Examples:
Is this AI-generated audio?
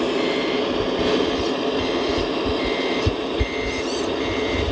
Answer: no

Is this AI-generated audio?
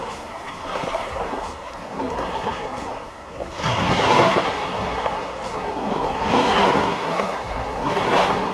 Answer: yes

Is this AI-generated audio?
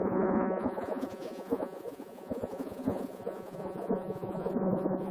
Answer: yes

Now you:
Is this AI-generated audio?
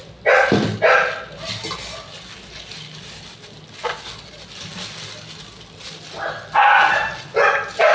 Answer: no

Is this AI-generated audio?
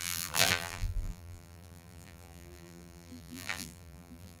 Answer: yes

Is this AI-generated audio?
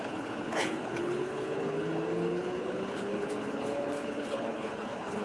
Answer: yes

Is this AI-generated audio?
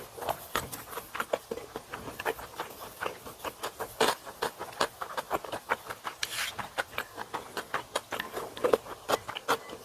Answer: no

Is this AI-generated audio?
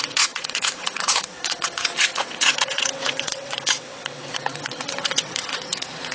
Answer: yes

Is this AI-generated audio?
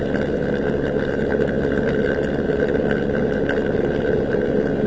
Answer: no